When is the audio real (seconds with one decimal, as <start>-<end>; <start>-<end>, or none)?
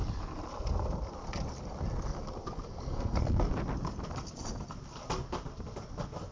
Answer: 0.0-2.8; 3.5-6.3